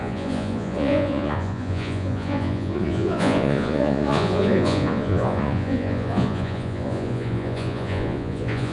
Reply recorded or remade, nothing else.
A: remade